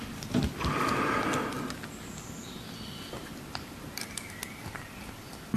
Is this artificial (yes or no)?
no